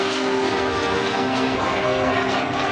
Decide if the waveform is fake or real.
fake